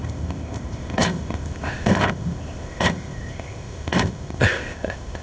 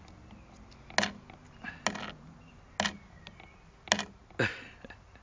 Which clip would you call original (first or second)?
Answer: second